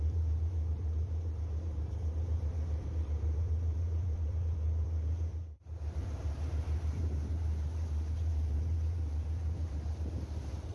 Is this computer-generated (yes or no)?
yes